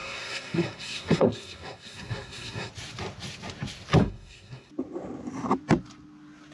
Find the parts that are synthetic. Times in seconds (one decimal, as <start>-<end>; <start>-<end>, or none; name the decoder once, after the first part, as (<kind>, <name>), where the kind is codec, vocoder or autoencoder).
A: 0.0-2.7 (codec, SNAC); 4.0-4.7